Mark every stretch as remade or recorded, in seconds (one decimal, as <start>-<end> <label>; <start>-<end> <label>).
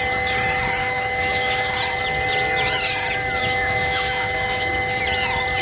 0.0-0.8 recorded; 0.8-1.7 remade; 1.7-3.4 recorded; 3.4-5.0 remade; 5.0-5.6 recorded